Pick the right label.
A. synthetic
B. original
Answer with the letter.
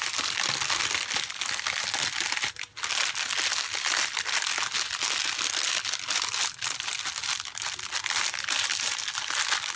B